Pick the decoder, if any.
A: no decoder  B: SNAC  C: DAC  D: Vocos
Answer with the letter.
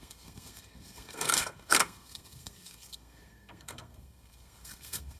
B